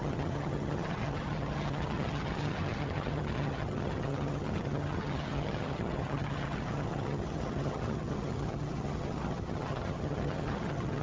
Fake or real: fake